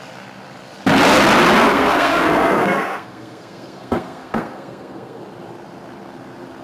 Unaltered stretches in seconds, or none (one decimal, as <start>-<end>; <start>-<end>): 0.0-1.7; 5.2-6.6